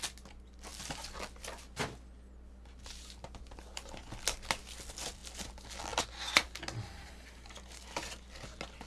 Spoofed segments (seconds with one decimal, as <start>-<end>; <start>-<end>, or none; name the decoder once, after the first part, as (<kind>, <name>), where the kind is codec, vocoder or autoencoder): none